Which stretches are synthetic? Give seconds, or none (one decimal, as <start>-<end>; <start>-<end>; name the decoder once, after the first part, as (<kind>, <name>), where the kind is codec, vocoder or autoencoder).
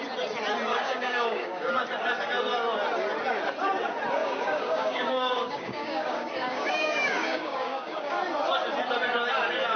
0.7-1.7 (codec, DAC); 4.2-8.1